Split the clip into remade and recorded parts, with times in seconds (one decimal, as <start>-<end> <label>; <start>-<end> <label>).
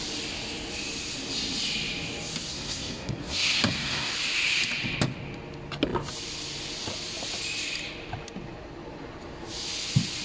0.0-2.5 recorded; 2.5-4.1 remade; 4.1-10.2 recorded